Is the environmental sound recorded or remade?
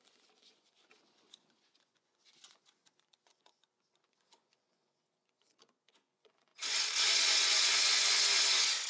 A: remade